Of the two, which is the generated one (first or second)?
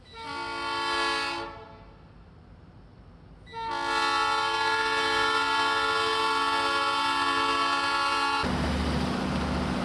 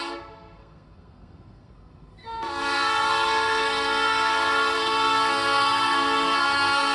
second